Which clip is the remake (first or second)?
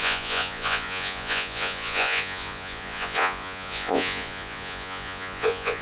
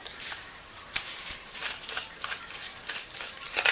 first